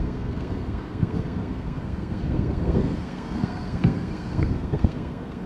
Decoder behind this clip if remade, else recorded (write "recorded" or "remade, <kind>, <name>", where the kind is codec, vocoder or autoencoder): remade, codec, SNAC